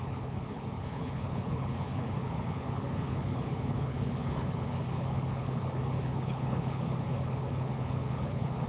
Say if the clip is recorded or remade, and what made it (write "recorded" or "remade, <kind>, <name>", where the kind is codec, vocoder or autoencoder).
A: remade, codec, HILCodec